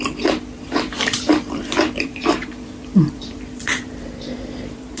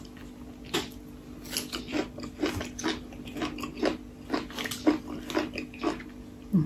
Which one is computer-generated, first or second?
first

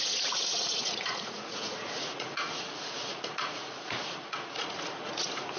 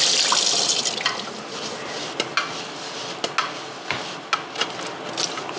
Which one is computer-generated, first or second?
first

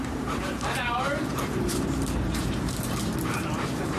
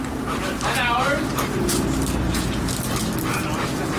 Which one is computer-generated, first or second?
first